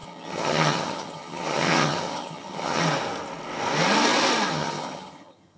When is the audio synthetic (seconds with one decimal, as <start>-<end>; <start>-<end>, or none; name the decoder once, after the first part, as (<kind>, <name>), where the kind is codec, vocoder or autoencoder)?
0.0-2.8 (vocoder, HiFi-GAN); 4.5-5.6